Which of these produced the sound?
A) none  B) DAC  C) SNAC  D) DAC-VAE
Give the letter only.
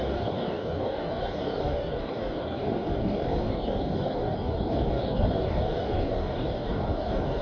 B